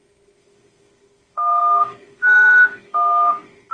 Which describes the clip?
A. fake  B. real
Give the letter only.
A